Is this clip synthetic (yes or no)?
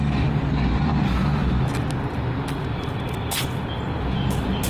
no